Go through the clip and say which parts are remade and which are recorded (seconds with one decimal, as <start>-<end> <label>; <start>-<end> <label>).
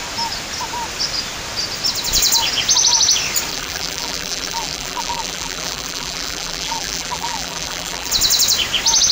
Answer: 0.0-3.5 recorded; 3.5-8.1 remade; 8.1-9.1 recorded